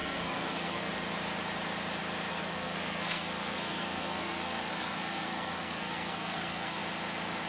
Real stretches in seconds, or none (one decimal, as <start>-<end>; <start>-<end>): 0.9-2.3; 6.8-7.5